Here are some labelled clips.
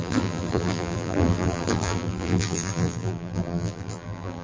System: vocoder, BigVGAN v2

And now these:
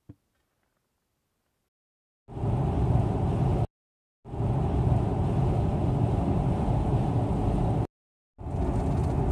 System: none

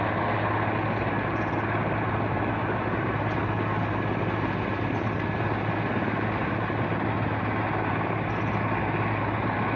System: none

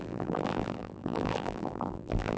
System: vocoder, BigVGAN v2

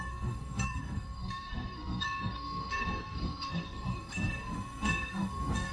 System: codec, SNAC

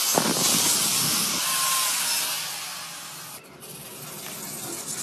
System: none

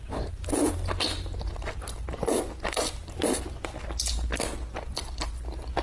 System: none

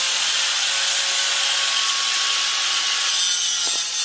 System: none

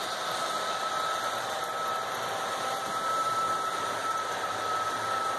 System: vocoder, BigVGAN v2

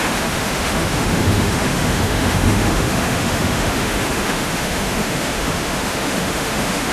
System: autoencoder, DAC-VAE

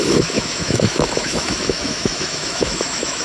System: autoencoder, DAC-VAE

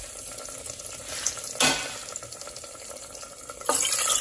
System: none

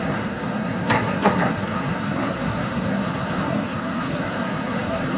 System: codec, SNAC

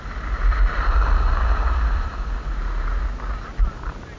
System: none